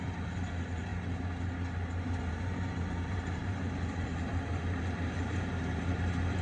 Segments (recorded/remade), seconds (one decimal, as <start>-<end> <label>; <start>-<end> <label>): 0.0-0.9 remade; 0.9-2.0 recorded; 2.0-6.4 remade